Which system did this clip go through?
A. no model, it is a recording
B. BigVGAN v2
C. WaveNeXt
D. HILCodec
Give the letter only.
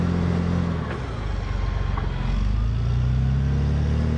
A